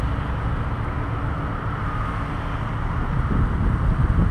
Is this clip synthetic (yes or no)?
no